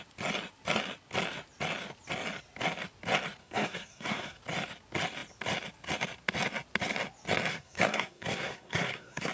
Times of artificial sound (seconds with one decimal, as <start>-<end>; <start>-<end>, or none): 3.4-4.4; 7.5-9.3